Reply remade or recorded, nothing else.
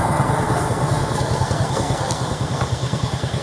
remade